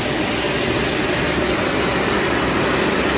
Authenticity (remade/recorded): recorded